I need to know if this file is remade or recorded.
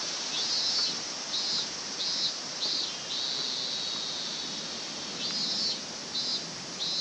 recorded